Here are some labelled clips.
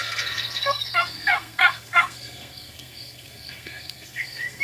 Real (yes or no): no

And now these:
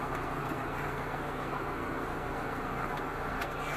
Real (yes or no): no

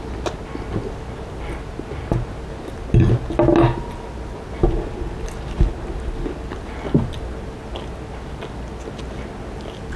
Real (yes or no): yes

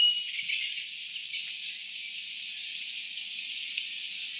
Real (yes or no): yes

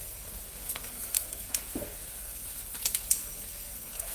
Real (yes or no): no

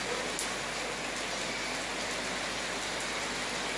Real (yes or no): yes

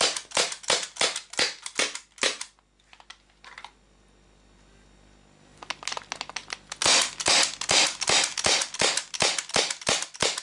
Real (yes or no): yes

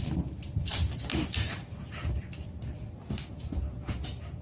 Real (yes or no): yes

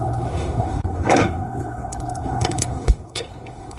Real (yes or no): no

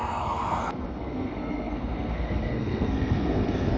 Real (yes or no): no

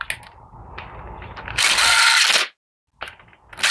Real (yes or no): yes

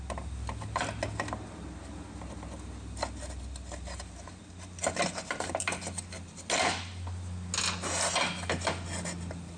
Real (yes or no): yes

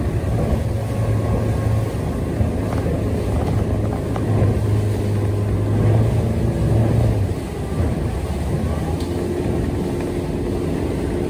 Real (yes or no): yes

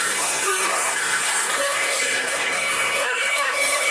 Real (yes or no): no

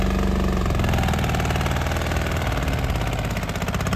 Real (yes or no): yes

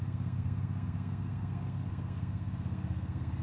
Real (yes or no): no